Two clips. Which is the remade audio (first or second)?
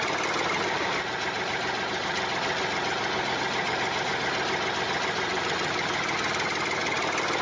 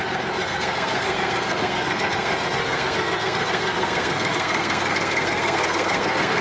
second